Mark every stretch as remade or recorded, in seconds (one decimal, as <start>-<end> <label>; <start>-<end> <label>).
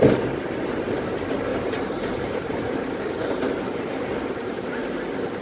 0.0-1.5 recorded; 1.5-4.7 remade; 4.7-5.4 recorded